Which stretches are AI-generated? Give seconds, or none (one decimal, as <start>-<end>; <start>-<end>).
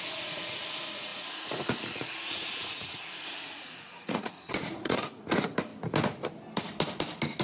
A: 0.0-5.7